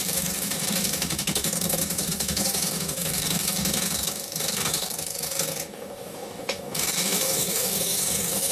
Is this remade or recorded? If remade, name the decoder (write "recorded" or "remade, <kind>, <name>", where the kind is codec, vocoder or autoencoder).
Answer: remade, codec, DAC